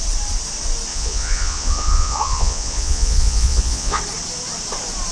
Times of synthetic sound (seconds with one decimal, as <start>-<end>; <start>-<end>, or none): 0.9-4.0